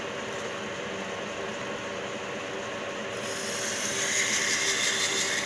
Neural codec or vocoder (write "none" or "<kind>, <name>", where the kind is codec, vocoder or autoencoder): none